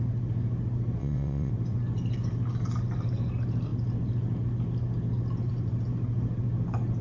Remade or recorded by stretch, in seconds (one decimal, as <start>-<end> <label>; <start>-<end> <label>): 0.0-1.0 recorded; 1.0-1.5 remade; 1.5-7.0 recorded